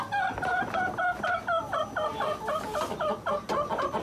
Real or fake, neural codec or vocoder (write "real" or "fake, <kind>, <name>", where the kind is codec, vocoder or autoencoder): real